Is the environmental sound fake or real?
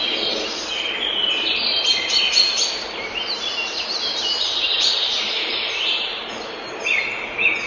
real